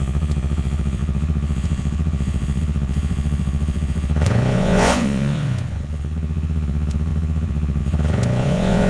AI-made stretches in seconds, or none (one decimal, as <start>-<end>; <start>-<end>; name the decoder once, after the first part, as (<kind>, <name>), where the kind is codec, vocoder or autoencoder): 0.0-8.9 (vocoder, Vocos)